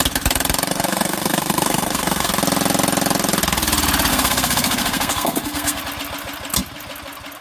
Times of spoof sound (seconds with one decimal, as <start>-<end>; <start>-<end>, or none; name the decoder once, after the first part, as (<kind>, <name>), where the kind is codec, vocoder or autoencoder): 0.7-2.3 (codec, SNAC); 4.1-5.8